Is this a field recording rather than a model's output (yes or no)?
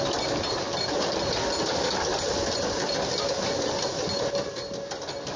yes